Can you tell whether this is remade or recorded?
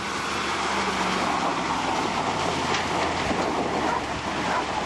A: recorded